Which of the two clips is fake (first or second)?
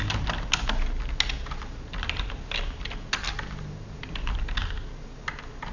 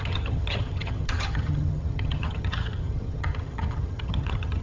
second